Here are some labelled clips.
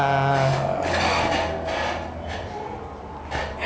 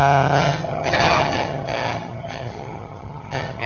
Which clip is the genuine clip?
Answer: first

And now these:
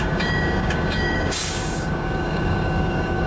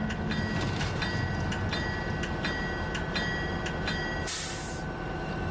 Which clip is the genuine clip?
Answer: second